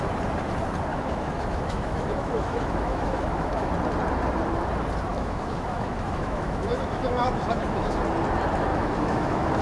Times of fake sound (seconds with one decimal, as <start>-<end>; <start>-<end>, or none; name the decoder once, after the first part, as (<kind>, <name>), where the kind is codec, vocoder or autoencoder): 0.9-3.7 (autoencoder, DAC-VAE); 5.1-8.0; 8.7-9.6